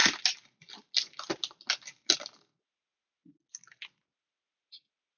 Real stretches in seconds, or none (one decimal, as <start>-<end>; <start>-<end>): 0.0-5.2